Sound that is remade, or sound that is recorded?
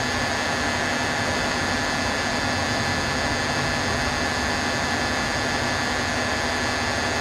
recorded